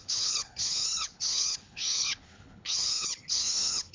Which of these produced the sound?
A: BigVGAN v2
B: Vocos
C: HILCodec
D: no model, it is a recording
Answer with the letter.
C